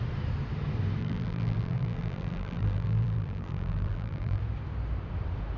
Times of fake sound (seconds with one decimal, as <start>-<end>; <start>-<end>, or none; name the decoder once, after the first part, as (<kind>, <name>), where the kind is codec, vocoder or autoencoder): 1.0-4.4 (vocoder, BigVGAN v2)